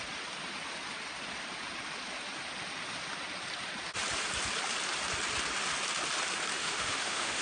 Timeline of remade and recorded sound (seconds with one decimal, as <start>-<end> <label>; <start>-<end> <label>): 0.0-6.6 recorded; 6.6-7.4 remade